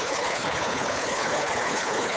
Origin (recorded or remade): remade